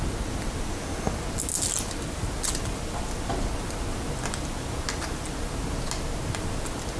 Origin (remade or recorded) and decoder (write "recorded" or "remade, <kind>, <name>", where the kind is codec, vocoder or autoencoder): recorded